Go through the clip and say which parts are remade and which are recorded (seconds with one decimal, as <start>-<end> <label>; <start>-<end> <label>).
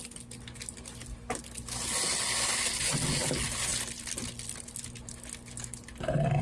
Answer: 0.0-6.4 recorded